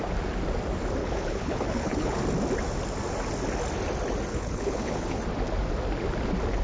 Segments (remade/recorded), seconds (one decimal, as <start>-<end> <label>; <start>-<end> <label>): 0.0-1.0 recorded; 1.0-2.2 remade; 2.2-4.3 recorded; 4.3-5.2 remade; 5.2-6.6 recorded